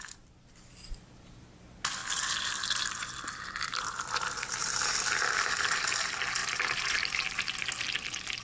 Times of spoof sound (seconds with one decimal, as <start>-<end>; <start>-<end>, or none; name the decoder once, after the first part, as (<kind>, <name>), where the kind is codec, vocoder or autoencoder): 2.0-4.9 (vocoder, BigVGAN v2)